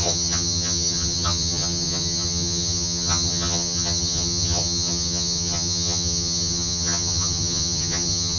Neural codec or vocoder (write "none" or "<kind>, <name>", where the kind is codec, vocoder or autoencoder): vocoder, HiFi-GAN